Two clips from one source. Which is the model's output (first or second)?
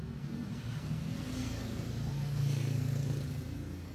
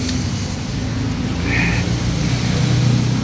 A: first